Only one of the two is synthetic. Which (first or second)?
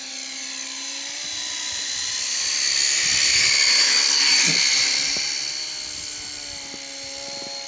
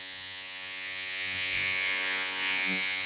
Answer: second